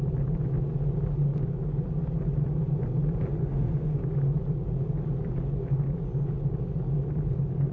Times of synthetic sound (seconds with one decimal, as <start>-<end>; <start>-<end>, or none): 3.4-4.0